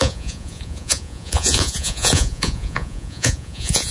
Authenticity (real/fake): fake